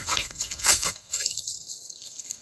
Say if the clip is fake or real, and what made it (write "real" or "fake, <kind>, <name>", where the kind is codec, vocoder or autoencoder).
fake, codec, SNAC